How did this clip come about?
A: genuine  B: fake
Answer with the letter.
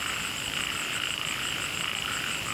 A